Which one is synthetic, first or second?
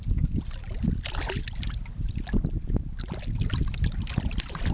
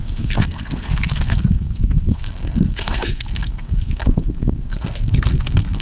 second